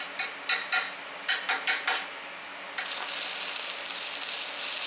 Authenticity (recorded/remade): recorded